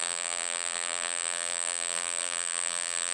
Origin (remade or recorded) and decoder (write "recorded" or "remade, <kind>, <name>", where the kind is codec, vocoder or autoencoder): remade, vocoder, BigVGAN v2